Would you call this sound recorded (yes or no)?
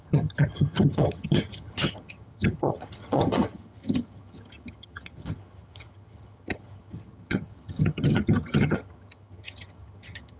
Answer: no